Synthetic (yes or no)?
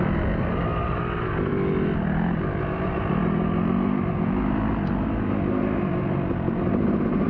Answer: no